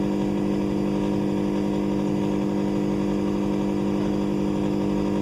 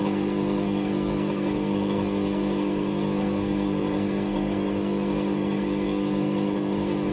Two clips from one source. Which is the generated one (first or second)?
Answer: second